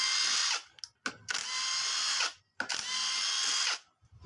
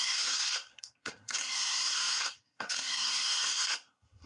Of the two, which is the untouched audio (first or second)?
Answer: first